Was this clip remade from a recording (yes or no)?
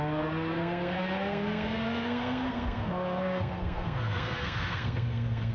yes